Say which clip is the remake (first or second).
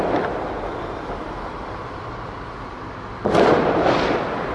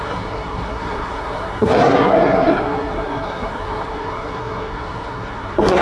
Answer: second